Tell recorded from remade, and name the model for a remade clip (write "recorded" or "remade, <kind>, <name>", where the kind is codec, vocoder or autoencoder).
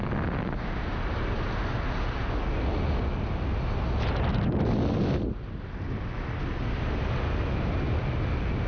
recorded